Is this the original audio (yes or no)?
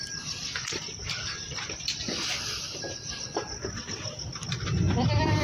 yes